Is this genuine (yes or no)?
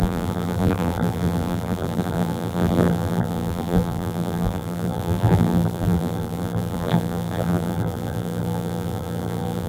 no